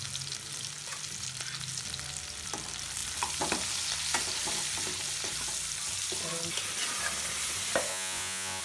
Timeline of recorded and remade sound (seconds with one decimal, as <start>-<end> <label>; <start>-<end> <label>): 0.0-7.9 recorded; 7.9-8.6 remade